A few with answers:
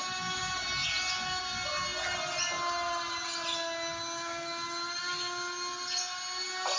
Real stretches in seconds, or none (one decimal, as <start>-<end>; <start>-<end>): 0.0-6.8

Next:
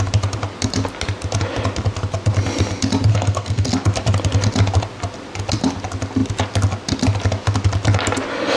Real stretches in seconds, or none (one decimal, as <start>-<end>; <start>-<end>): 0.0-3.1; 3.7-8.6

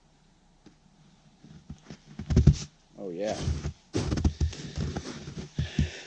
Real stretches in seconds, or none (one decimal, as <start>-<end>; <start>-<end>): 0.0-6.1

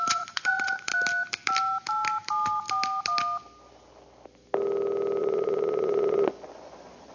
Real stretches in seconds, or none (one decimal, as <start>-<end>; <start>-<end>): 0.9-5.2